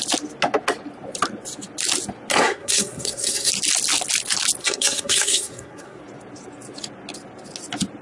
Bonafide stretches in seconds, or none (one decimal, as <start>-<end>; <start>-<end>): 0.0-2.3; 3.5-4.6; 6.0-8.0